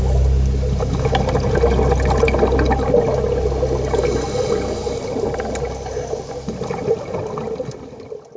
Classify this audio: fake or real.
real